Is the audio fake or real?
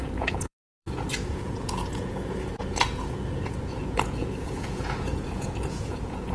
fake